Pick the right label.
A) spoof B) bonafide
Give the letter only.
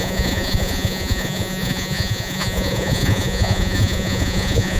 A